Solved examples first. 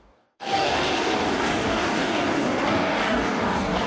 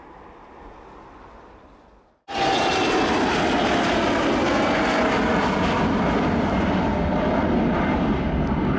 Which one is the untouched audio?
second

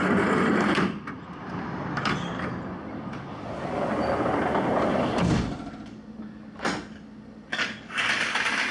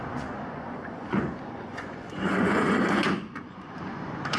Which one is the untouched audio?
first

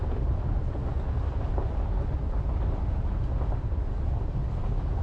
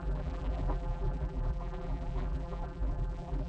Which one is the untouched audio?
first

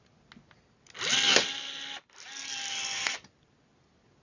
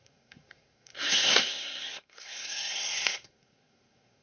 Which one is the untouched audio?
first